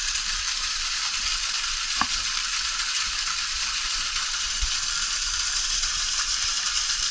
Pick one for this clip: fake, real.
fake